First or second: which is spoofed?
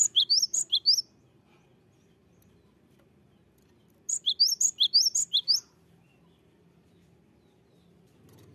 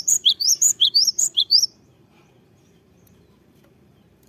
second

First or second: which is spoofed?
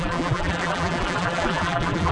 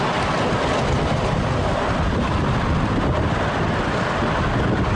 first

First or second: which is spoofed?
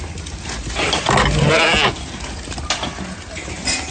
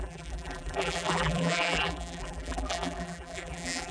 second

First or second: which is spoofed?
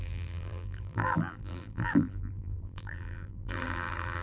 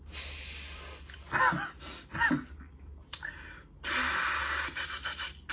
first